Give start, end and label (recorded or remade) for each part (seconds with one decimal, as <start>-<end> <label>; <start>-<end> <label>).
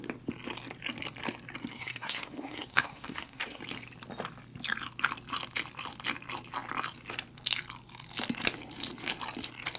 0.0-1.7 recorded; 1.7-3.6 remade; 3.6-9.8 recorded